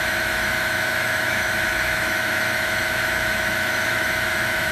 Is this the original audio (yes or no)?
no